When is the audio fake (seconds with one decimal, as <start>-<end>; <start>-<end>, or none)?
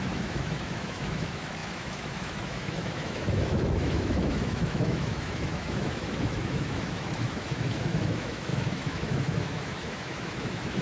0.0-10.8